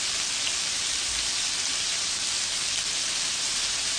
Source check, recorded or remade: recorded